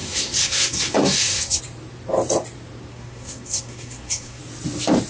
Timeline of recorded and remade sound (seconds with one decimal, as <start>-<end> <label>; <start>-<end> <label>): 0.0-1.6 remade; 1.6-2.9 recorded; 2.9-4.4 remade; 4.4-5.1 recorded